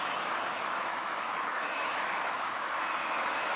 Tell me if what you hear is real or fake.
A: fake